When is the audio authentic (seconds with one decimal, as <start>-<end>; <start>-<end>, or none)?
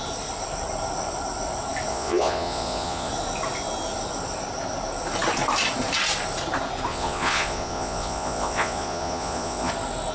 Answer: 0.0-1.9; 3.1-6.9; 9.7-10.1